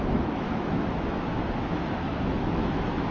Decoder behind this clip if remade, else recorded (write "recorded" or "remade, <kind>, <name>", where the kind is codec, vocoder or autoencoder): remade, autoencoder, DAC-VAE